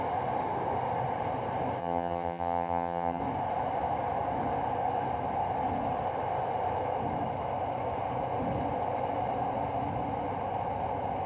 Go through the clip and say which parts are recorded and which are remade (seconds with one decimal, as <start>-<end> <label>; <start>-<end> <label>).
0.0-1.8 recorded; 1.8-3.2 remade; 3.2-11.3 recorded